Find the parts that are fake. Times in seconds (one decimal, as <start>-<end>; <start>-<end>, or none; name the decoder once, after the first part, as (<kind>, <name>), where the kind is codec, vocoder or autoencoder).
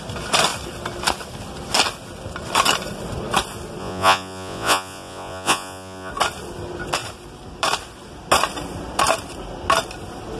3.8-6.1 (vocoder, Vocos)